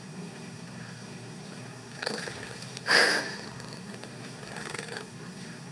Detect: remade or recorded remade